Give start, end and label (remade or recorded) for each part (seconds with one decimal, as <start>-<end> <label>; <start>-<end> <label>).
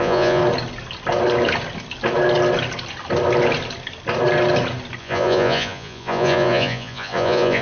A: 0.0-0.4 remade; 0.4-5.0 recorded; 5.0-7.6 remade